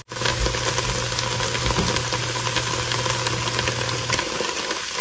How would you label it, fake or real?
real